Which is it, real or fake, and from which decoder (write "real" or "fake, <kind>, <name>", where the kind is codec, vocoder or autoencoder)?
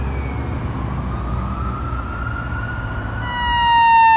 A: real